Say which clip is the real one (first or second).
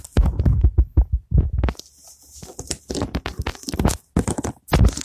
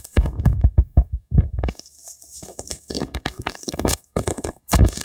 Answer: first